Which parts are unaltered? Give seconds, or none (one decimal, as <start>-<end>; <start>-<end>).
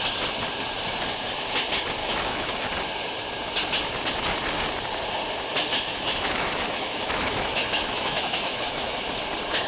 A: 0.0-2.0; 2.6-5.9; 9.0-9.7